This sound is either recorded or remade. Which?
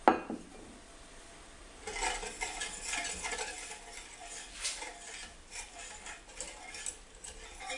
recorded